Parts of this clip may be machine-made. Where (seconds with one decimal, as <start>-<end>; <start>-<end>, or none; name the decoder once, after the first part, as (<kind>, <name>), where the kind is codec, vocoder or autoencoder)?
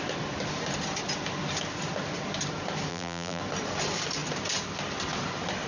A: 2.9-3.4 (vocoder, BigVGAN v2)